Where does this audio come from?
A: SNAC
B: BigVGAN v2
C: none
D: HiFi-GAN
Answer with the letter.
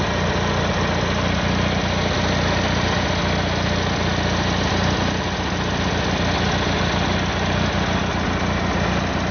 C